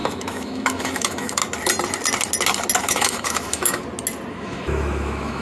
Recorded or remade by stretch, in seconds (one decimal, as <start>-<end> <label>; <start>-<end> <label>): 0.0-1.4 remade; 1.4-2.8 recorded; 2.8-3.8 remade; 3.8-4.3 recorded; 4.3-5.4 remade